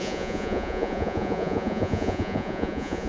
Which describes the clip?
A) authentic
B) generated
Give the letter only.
B